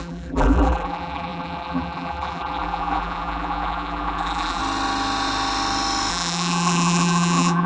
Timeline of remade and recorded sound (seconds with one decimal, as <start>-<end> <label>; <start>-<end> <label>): 0.0-4.6 remade; 4.6-6.1 recorded; 6.1-7.7 remade